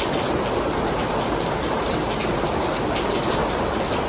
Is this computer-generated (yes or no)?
no